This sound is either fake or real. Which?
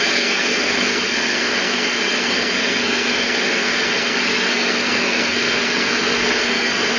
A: fake